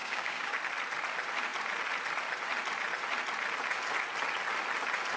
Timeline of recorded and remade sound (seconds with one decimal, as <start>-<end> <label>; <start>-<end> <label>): 0.0-0.6 remade; 0.6-5.2 recorded